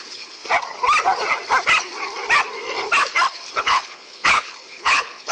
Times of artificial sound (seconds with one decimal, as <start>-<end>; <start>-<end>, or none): 0.0-0.4; 3.6-5.3